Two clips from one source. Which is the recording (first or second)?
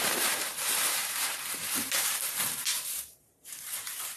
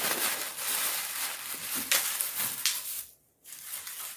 second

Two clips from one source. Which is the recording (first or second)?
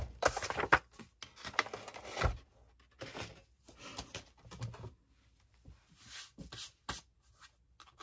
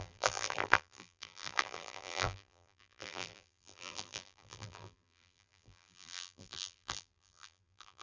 first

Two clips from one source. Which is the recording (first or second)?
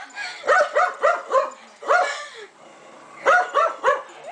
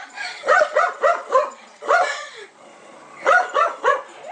first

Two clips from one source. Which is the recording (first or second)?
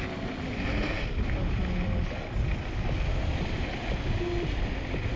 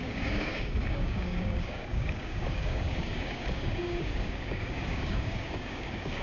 first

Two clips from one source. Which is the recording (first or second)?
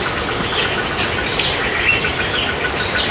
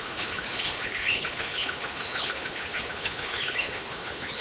first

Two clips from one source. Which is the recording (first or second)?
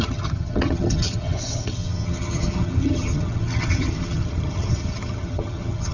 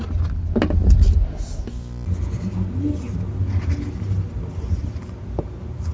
second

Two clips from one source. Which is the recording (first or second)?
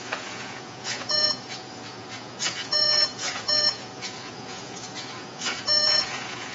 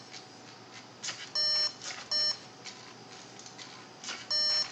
second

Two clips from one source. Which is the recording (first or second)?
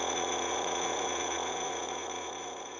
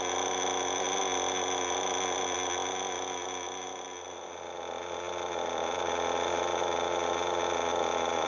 second